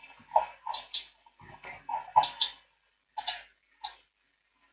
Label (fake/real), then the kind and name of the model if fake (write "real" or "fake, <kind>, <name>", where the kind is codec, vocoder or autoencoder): real